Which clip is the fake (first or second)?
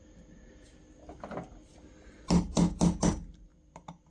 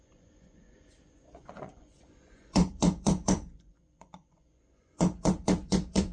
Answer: second